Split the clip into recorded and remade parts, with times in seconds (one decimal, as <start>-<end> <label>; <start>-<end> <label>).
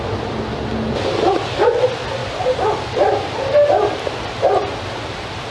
0.0-2.2 recorded; 2.2-5.5 remade